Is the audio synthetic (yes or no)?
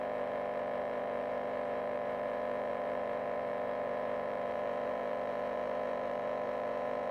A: yes